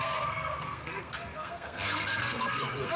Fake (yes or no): yes